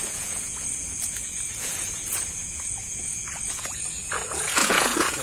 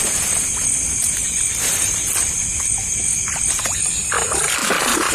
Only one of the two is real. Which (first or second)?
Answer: second